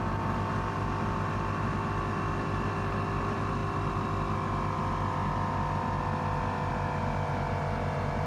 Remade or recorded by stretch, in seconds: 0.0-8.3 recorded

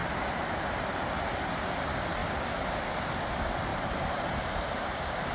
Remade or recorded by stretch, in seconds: 0.0-0.9 remade; 0.9-2.2 recorded; 2.2-2.8 remade; 2.8-3.7 recorded; 3.7-5.3 remade

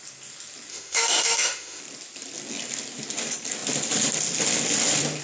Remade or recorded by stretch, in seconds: 0.0-0.7 recorded; 0.7-1.8 remade; 1.8-5.2 recorded